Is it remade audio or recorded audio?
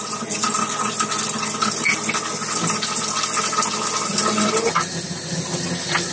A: recorded